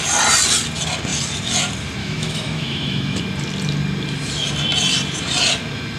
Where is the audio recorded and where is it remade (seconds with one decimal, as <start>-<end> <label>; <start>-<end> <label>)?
0.0-2.0 recorded; 2.0-3.2 remade; 3.2-6.0 recorded